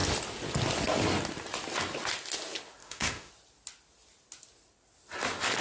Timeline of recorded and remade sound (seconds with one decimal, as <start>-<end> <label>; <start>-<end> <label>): 0.0-2.8 recorded; 2.8-3.3 remade; 3.3-5.6 recorded